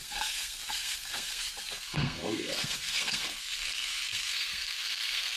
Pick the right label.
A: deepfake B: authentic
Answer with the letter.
A